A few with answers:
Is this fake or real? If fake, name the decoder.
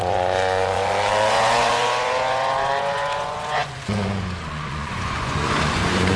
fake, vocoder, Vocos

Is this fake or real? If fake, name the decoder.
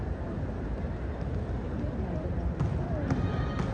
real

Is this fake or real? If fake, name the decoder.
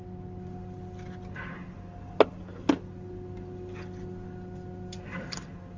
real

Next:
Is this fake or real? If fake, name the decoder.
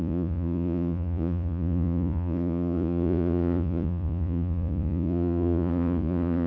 fake, vocoder, Vocos